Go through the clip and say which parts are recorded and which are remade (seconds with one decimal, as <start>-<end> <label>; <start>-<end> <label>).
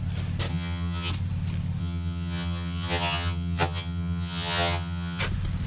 0.0-0.5 recorded; 0.5-1.1 remade; 1.1-1.8 recorded; 1.8-5.2 remade; 5.2-5.7 recorded